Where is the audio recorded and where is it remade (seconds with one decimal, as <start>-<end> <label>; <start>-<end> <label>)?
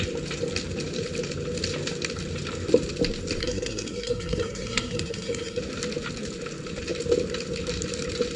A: 0.0-3.4 recorded; 3.4-5.6 remade; 5.6-8.4 recorded